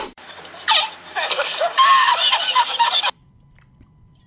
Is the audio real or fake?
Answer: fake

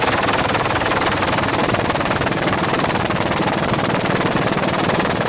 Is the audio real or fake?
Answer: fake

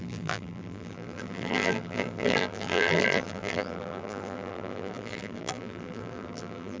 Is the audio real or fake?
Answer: fake